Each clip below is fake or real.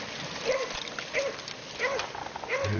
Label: real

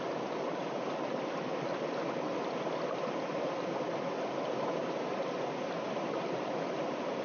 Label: real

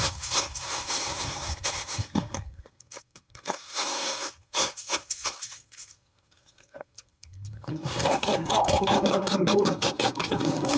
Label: fake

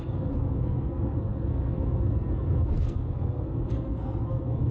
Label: fake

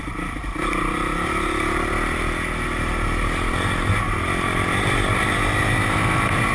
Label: real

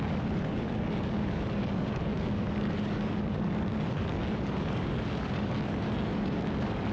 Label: fake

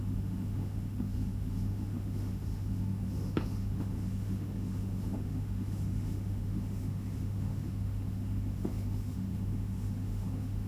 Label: fake